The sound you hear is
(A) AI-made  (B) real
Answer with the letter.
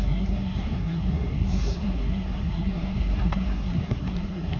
A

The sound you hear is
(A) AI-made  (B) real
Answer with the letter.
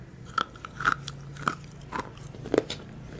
B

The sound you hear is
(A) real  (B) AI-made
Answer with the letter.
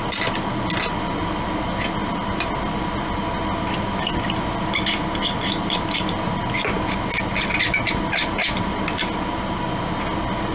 A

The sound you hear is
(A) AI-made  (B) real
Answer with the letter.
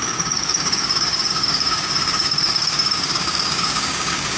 A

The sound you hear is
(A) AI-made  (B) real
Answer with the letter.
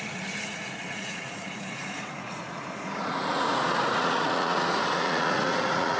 A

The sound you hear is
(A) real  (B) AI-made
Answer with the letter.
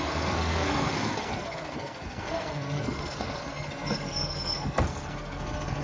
B